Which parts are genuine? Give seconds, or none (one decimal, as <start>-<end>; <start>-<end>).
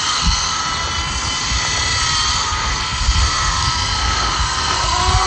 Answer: 0.6-2.3